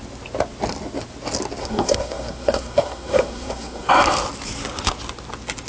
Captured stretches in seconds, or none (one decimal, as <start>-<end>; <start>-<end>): 0.0-1.6; 3.9-5.7